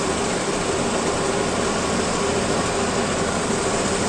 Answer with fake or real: real